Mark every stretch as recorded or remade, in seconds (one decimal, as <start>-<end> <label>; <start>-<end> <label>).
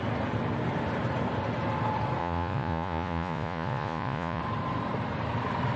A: 0.0-2.2 recorded; 2.2-4.4 remade; 4.4-5.8 recorded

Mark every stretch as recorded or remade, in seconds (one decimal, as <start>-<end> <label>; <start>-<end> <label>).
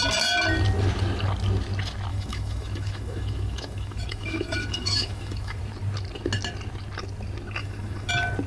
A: 0.0-2.1 recorded; 2.1-5.6 remade; 5.6-7.6 recorded; 7.6-8.1 remade; 8.1-8.5 recorded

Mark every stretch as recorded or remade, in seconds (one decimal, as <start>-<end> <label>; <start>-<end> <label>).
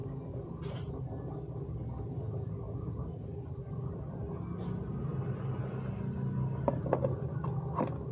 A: 0.0-0.9 remade; 0.9-8.1 recorded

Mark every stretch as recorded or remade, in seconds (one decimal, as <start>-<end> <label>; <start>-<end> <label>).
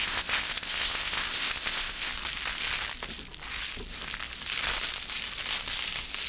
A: 0.0-2.1 remade; 2.1-6.3 recorded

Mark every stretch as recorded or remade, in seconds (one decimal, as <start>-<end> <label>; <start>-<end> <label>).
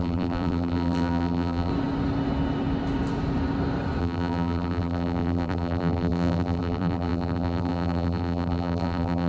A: 0.0-1.7 remade; 1.7-4.0 recorded; 4.0-9.3 remade